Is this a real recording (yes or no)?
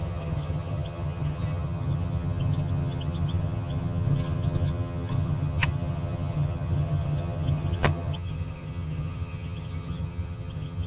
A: no